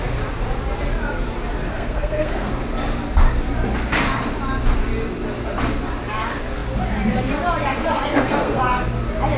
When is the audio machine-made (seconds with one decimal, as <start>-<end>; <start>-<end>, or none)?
1.7-2.5; 7.8-8.6